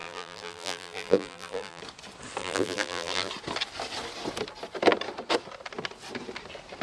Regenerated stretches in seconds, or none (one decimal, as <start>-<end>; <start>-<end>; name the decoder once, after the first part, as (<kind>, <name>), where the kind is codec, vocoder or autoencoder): 0.0-1.8 (vocoder, BigVGAN v2); 2.4-3.3